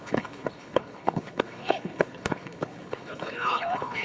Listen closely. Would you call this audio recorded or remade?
remade